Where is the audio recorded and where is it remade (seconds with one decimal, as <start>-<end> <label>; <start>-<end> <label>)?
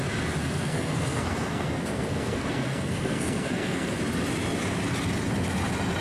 0.0-0.4 recorded; 0.4-4.0 remade; 4.0-6.0 recorded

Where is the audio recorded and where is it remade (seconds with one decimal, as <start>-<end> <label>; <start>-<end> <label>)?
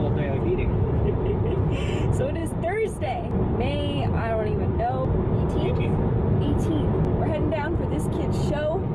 0.0-8.9 recorded